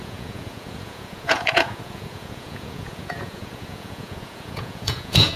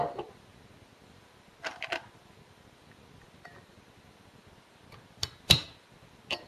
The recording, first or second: second